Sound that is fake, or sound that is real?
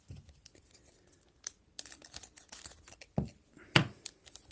real